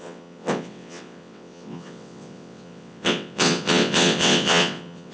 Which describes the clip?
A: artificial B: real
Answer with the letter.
A